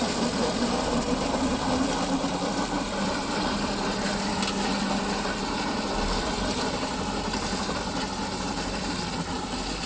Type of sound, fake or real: fake